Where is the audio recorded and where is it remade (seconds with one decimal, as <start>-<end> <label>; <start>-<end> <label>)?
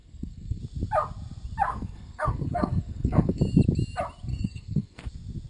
0.0-0.6 remade; 0.6-1.7 recorded; 1.7-3.4 remade; 3.4-4.3 recorded; 4.3-5.0 remade; 5.0-5.5 recorded